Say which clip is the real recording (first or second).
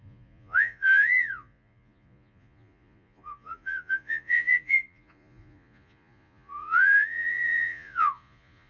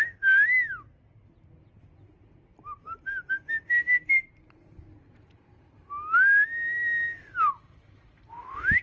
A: second